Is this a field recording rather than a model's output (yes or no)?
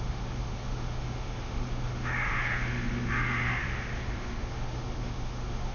no